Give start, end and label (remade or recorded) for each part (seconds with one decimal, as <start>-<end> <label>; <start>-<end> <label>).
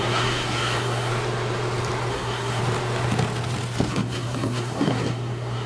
0.0-1.1 remade; 1.1-2.1 recorded; 2.1-2.6 remade; 2.6-3.9 recorded; 3.9-5.7 remade